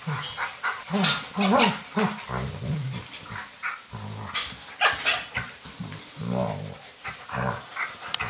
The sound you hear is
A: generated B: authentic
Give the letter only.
B